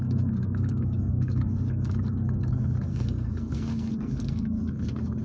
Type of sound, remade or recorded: remade